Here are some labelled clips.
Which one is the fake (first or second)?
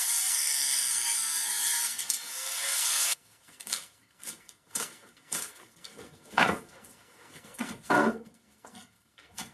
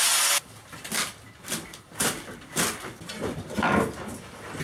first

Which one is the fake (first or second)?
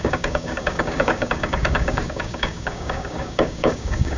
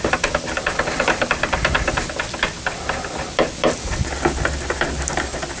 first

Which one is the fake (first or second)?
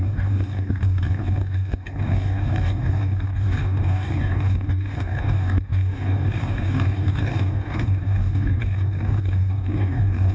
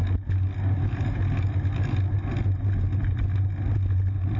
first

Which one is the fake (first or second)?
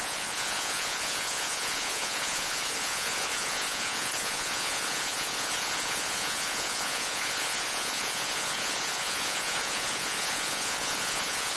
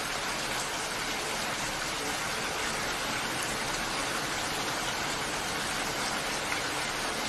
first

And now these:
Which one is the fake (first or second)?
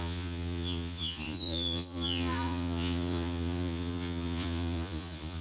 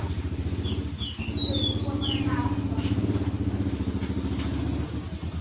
first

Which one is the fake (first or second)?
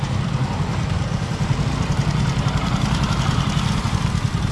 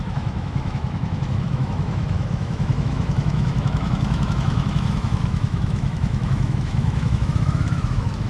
second